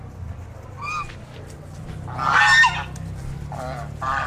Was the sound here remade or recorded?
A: recorded